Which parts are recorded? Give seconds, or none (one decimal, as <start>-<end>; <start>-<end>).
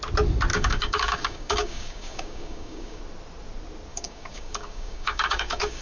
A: 0.0-0.5; 3.0-3.9